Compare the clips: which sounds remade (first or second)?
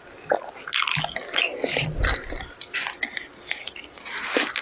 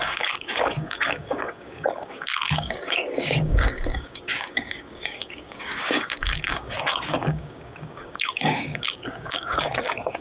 second